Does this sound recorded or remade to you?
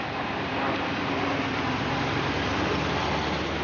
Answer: recorded